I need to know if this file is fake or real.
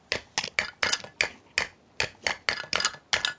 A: real